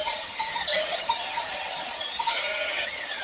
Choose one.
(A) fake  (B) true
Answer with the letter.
A